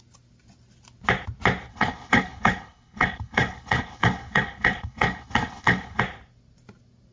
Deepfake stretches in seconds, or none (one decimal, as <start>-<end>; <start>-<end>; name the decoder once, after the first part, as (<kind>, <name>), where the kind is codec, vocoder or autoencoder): 1.7-6.0 (codec, HILCodec)